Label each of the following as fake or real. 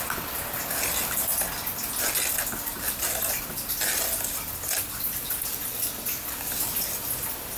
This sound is real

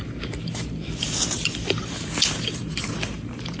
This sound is fake